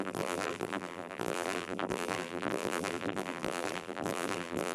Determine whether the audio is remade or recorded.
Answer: remade